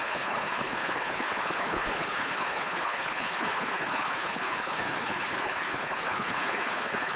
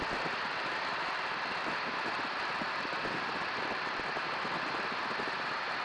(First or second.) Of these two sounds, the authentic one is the second